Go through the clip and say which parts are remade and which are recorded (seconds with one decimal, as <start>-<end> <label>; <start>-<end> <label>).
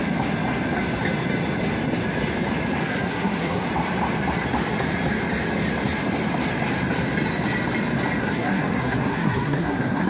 0.0-2.8 recorded; 2.8-3.7 remade; 3.7-8.2 recorded; 8.2-10.1 remade